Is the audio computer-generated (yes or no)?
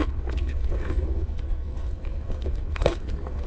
yes